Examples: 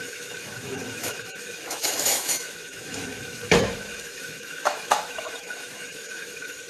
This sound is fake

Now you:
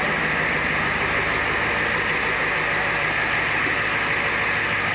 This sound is real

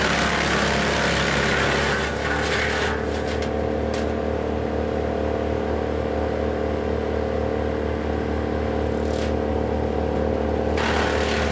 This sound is real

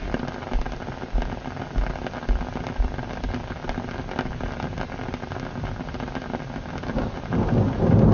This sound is real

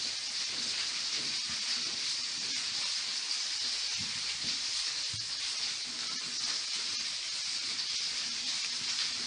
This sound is real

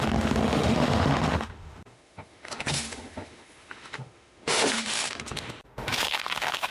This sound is fake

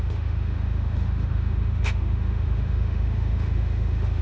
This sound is fake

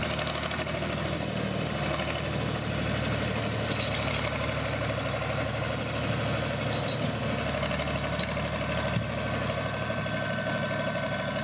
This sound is real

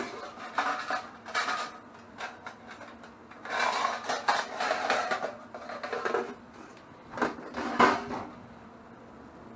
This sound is real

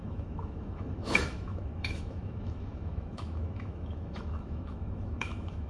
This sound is fake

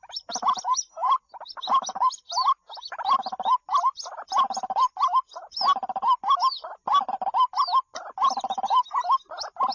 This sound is real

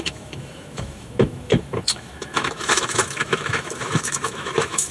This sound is fake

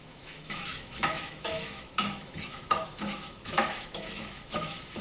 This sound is fake